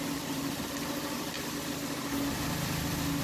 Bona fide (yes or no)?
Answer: no